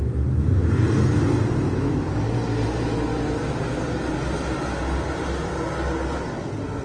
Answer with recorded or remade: recorded